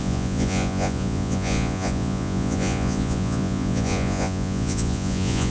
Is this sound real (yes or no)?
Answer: no